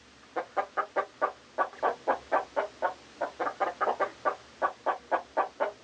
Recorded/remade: recorded